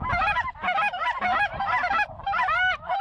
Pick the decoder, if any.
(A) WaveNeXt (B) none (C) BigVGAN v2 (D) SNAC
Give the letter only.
C